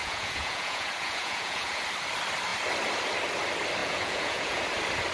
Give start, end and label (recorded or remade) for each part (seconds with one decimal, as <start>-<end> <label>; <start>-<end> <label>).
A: 0.0-1.8 remade; 1.8-3.8 recorded; 3.8-4.6 remade; 4.6-5.1 recorded